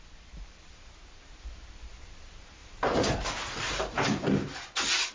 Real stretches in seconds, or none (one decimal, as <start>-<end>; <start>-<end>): 0.0-2.6